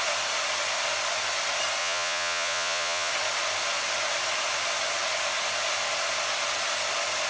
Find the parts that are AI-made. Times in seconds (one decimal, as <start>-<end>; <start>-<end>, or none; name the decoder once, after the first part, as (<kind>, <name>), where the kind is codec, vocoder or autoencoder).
1.8-3.1 (vocoder, Vocos)